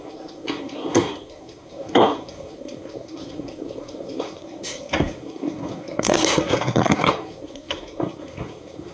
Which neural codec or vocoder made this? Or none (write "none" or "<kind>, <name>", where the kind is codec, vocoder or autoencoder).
codec, SNAC